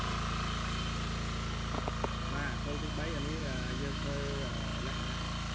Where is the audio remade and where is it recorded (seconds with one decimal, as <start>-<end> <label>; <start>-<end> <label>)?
0.0-3.4 recorded; 3.4-4.5 remade; 4.5-5.5 recorded

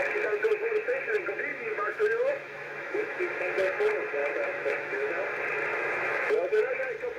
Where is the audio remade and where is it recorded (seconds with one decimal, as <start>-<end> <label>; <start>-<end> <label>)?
0.0-1.5 recorded; 1.5-3.5 remade; 3.5-4.2 recorded; 4.2-5.1 remade; 5.1-5.7 recorded; 5.7-6.6 remade; 6.6-7.2 recorded